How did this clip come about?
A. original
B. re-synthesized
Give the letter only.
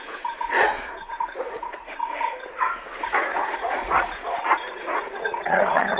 B